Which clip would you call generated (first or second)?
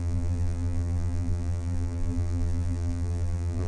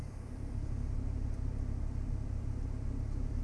first